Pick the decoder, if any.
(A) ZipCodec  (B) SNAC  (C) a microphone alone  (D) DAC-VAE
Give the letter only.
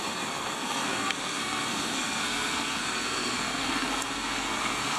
B